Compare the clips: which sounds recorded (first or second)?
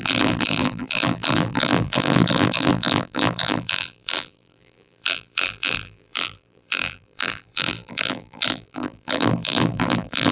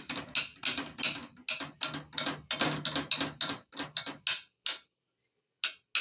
second